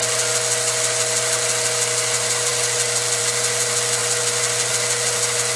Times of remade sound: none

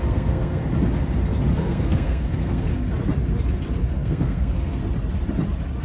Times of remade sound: 0.0-0.6; 1.6-2.7; 3.9-4.8

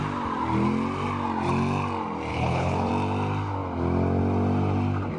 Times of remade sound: 2.3-2.9